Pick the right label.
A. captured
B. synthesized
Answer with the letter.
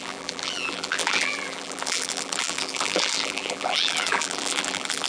B